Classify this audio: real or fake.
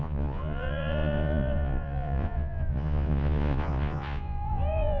fake